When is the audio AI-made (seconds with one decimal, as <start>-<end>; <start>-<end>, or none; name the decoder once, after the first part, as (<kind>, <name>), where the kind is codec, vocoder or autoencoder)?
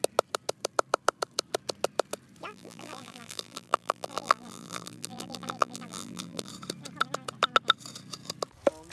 2.5-6.5 (vocoder, BigVGAN v2)